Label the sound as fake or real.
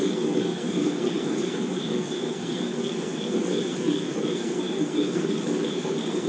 fake